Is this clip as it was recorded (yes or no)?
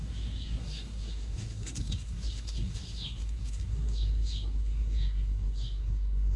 no